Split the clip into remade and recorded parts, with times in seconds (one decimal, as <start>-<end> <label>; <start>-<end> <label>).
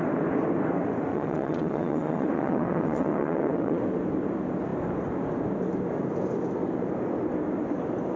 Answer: 0.0-1.1 recorded; 1.1-3.8 remade; 3.8-8.2 recorded